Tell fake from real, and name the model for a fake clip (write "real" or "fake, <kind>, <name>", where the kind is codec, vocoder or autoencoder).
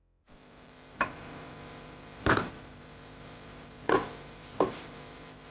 fake, vocoder, BigVGAN v2